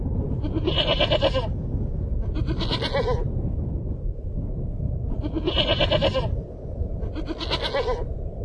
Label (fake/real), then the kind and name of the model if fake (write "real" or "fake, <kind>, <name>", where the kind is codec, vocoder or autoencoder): real